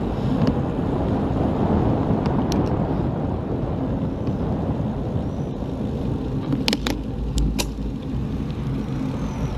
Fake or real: real